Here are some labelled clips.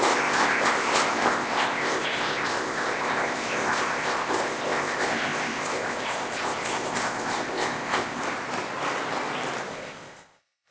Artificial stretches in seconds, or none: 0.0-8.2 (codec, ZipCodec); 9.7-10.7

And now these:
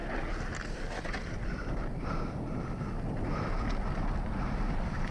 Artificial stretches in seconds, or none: none

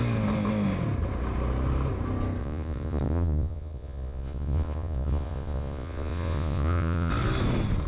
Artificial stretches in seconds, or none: 2.4-7.1 (vocoder, Vocos)

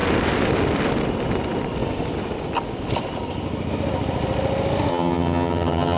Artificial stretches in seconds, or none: 4.9-6.0 (vocoder, HiFi-GAN)

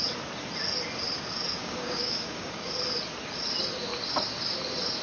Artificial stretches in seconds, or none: 1.6-2.7 (codec, DAC)

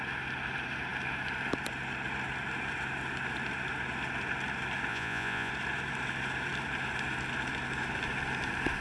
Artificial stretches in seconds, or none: 4.9-5.5 (vocoder, Vocos)